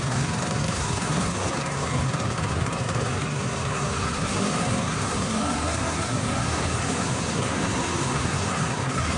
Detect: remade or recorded remade